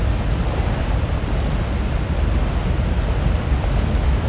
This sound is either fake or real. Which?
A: real